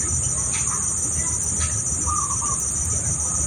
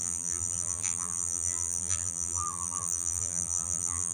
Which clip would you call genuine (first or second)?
first